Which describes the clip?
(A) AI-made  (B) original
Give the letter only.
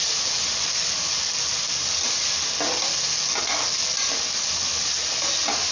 B